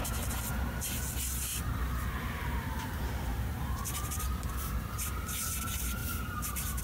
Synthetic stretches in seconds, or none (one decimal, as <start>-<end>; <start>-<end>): 1.5-5.6; 6.0-6.8

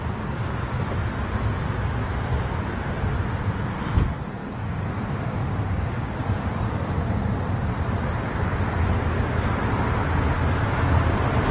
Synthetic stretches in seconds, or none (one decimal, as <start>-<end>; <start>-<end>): 4.4-6.1

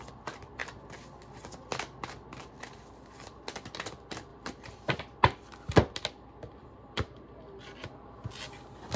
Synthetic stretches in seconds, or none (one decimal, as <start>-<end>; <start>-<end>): 4.3-5.0; 6.6-7.4